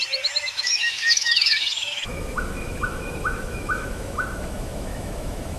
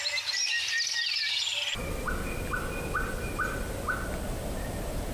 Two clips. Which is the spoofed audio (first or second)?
first